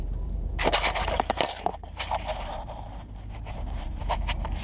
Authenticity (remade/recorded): remade